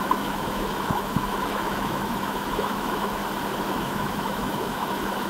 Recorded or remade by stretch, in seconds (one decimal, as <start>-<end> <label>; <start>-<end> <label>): 0.0-3.2 remade; 3.2-3.7 recorded; 3.7-5.3 remade